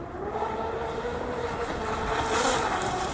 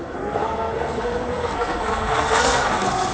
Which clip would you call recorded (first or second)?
first